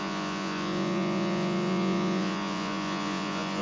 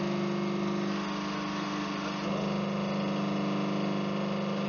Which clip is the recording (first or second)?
second